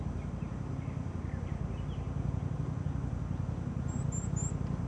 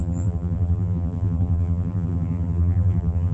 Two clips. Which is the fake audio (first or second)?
second